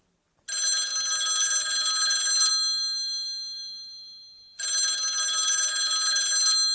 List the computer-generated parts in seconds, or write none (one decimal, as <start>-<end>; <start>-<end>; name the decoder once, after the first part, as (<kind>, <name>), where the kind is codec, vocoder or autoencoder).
none